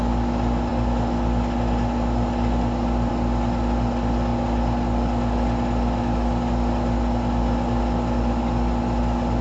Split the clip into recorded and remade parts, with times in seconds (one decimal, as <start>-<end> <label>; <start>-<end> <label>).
0.0-9.4 recorded